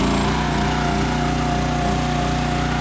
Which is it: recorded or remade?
recorded